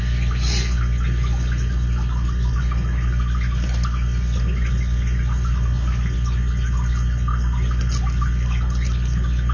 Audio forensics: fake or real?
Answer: real